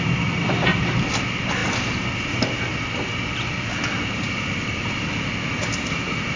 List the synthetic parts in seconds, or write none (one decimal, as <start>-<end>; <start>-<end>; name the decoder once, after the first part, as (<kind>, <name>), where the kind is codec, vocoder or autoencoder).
none